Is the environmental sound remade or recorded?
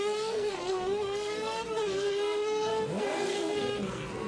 remade